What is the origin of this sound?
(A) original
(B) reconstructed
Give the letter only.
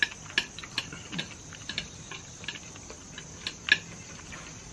A